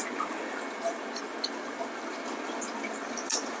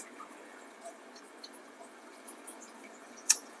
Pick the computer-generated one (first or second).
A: second